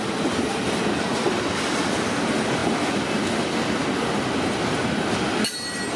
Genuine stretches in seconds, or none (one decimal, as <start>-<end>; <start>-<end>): 0.0-6.0